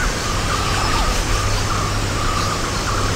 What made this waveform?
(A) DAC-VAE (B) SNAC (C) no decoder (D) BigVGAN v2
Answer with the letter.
C